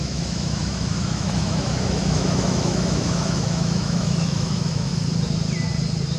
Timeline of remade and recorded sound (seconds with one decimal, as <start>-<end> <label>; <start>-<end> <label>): 0.0-4.9 remade; 4.9-6.2 recorded